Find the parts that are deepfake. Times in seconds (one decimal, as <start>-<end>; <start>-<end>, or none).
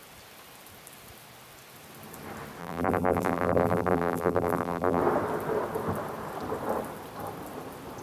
2.6-5.0